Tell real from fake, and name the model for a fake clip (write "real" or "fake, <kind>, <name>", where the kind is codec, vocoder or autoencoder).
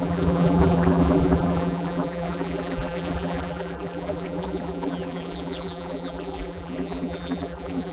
fake, vocoder, BigVGAN v2